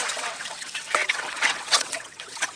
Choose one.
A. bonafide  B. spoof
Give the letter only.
B